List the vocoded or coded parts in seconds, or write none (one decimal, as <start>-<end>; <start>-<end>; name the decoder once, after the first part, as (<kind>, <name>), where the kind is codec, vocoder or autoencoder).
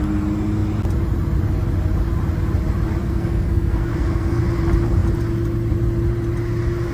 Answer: 3.0-4.4 (codec, SNAC)